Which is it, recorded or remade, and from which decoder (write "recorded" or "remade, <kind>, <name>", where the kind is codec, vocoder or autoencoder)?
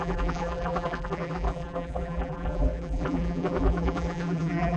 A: remade, vocoder, BigVGAN v2